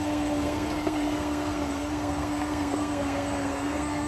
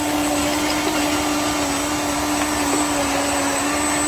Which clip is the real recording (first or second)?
second